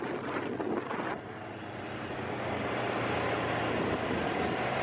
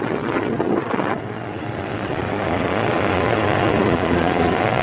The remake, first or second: second